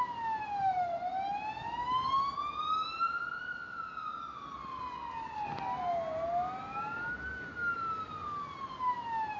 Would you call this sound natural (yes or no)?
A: yes